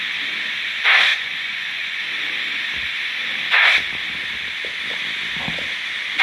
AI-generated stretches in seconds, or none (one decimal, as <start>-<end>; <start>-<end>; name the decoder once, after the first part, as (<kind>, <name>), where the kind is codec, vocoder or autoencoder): 1.1-2.0 (vocoder, Vocos)